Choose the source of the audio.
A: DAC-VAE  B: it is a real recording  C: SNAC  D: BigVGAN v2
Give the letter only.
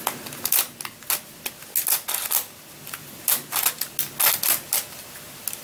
B